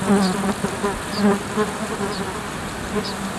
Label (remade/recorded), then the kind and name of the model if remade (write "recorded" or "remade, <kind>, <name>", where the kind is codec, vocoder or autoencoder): recorded